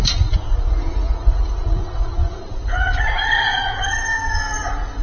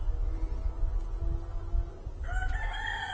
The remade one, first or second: first